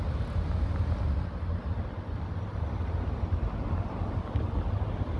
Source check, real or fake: real